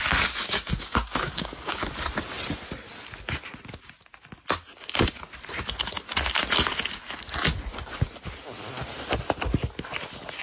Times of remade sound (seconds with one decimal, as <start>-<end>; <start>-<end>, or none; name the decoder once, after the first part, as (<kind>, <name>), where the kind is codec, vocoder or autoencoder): 0.4-1.9 (codec, DAC)